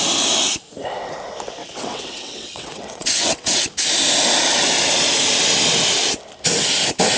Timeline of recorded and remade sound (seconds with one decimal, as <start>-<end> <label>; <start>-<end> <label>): 0.0-1.6 recorded; 1.6-3.6 remade; 3.6-7.2 recorded